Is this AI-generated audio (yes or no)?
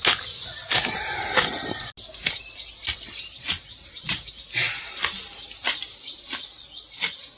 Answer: no